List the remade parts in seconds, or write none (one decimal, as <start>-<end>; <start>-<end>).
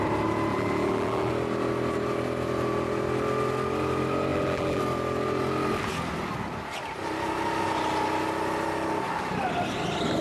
0.5-1.3; 4.3-4.8